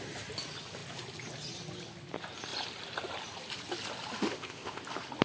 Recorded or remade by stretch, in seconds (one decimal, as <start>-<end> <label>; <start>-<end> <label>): 0.0-4.2 recorded; 4.2-4.8 remade; 4.8-5.2 recorded